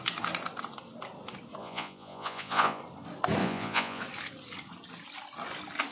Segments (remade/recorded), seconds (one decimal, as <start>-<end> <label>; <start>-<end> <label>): 0.0-1.6 recorded; 1.6-2.8 remade; 2.8-3.4 recorded; 3.4-4.0 remade; 4.0-5.9 recorded